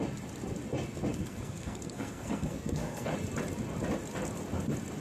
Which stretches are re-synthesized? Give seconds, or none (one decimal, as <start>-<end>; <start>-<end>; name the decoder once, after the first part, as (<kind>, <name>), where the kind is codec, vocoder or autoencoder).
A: 1.1-3.1 (codec, SNAC)